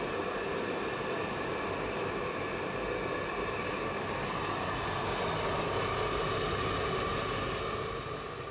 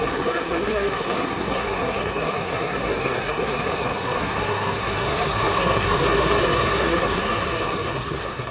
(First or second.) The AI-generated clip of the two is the second